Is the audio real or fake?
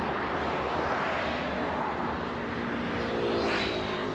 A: real